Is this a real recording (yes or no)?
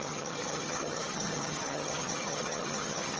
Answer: no